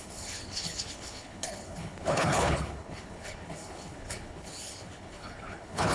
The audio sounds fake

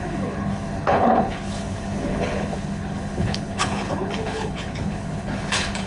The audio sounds fake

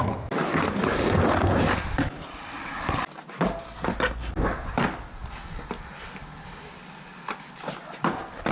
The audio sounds real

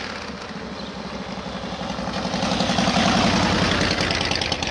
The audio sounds real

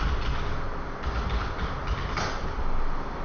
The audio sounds real